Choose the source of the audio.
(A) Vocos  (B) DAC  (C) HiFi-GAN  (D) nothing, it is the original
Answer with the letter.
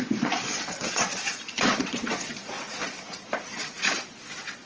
A